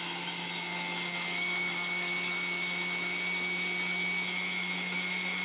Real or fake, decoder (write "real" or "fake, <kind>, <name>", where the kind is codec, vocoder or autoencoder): fake, autoencoder, DAC-VAE